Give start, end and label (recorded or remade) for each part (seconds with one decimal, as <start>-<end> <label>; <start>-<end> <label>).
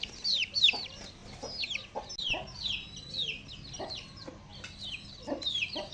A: 0.0-1.2 remade; 1.2-3.8 recorded; 3.8-4.5 remade; 4.5-5.5 recorded; 5.5-5.9 remade